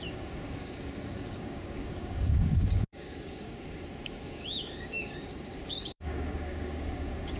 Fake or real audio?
fake